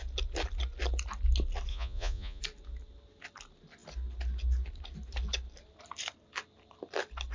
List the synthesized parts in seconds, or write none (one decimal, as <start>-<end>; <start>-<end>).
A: 1.7-2.4